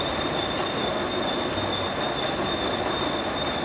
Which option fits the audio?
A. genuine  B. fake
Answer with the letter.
A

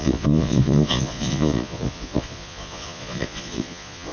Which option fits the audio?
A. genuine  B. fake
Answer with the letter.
B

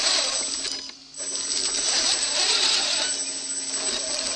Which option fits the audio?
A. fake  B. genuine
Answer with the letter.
B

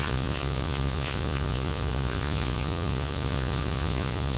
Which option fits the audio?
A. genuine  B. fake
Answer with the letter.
B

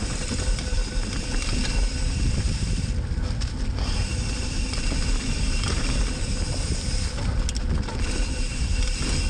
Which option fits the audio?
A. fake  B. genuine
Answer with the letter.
B